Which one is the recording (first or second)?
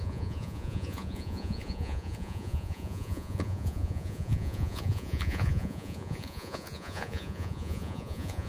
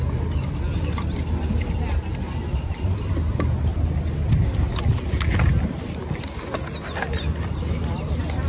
second